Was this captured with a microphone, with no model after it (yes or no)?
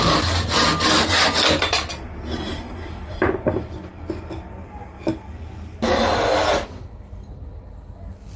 yes